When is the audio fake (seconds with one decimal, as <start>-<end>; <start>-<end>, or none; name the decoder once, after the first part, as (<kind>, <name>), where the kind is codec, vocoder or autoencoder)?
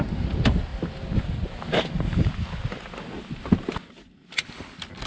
none